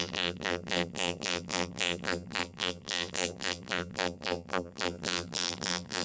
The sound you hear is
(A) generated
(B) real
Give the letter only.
A